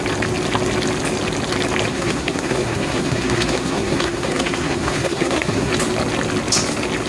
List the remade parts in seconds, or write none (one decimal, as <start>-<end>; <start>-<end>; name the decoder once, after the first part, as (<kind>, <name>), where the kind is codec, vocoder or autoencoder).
1.9-5.7 (codec, SNAC)